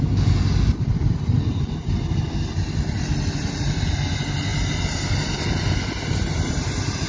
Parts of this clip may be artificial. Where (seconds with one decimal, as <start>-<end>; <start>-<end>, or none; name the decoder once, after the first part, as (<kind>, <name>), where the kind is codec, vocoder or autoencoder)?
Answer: none